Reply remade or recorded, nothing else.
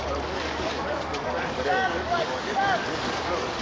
remade